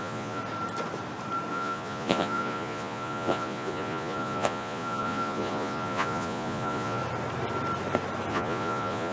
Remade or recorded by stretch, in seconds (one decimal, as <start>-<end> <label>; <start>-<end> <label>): 0.0-0.4 remade; 0.4-1.5 recorded; 1.5-7.0 remade; 7.0-8.3 recorded; 8.3-9.1 remade